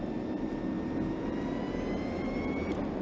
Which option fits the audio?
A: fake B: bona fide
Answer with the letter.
B